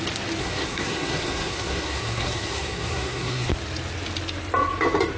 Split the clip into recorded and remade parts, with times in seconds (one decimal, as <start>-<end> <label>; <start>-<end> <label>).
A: 0.0-0.4 recorded; 0.4-3.5 remade; 3.5-5.2 recorded